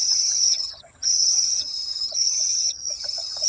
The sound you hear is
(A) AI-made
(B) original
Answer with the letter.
A